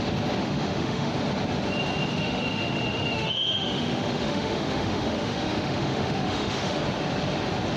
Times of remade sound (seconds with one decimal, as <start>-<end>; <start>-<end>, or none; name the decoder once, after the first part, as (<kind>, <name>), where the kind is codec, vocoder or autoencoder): 0.4-1.1 (autoencoder, DAC-VAE); 2.1-6.8

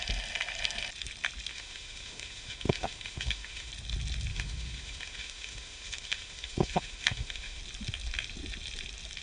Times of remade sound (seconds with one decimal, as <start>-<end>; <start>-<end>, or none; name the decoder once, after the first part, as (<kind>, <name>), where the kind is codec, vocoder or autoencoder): 1.5-3.7 (autoencoder, DAC-VAE); 4.3-7.6